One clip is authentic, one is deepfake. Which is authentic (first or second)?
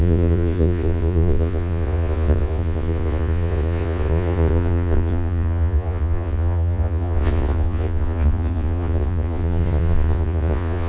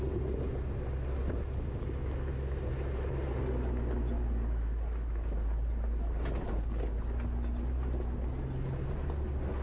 second